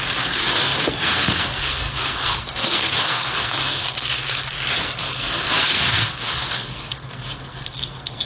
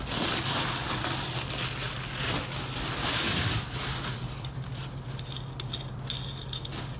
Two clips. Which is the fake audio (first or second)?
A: first